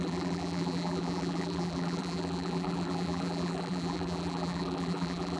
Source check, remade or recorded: remade